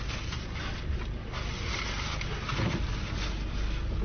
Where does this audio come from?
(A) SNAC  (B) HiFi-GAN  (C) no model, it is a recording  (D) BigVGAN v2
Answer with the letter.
C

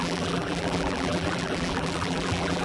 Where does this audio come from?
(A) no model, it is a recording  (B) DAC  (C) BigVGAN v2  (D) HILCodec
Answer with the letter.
C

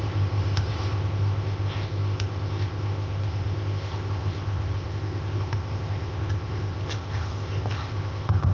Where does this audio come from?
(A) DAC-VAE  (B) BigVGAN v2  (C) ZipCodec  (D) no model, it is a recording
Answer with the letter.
C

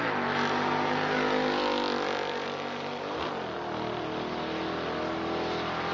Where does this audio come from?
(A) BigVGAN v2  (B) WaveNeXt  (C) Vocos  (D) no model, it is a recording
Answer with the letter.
D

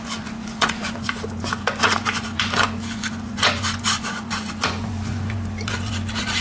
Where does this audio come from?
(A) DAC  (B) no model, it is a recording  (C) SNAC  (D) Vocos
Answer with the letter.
D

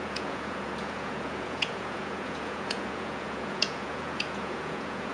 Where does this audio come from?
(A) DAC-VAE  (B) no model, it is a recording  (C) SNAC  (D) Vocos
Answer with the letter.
D